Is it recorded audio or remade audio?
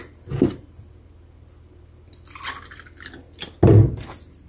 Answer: recorded